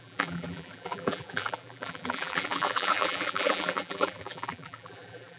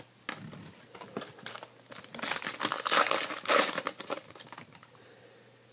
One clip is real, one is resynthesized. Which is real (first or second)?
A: second